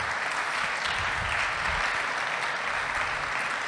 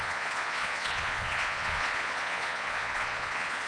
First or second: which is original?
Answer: first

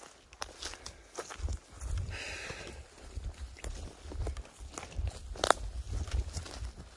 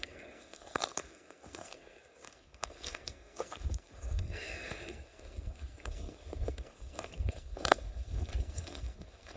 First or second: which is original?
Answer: first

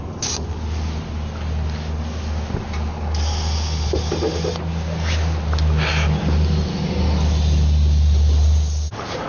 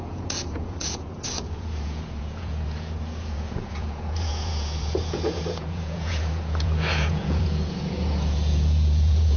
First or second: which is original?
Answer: first